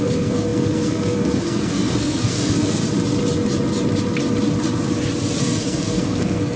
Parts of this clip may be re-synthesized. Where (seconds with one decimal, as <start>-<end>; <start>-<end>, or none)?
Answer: 0.0-2.8; 5.4-6.6